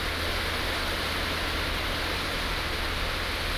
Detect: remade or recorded recorded